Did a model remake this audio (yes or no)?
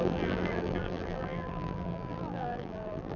yes